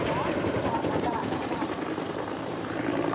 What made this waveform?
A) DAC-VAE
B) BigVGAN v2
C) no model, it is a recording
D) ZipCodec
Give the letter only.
B